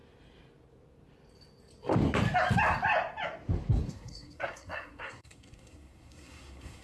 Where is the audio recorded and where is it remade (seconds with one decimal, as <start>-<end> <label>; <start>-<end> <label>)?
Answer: 0.0-3.7 recorded; 3.7-6.8 remade